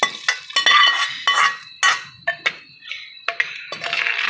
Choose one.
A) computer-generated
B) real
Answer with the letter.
B